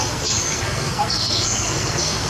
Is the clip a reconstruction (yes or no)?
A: yes